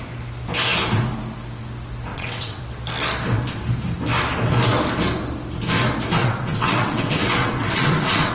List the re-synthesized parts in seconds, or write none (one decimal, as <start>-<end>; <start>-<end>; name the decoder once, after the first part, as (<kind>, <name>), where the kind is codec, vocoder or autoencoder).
2.1-2.6 (vocoder, WaveNeXt); 6.2-8.3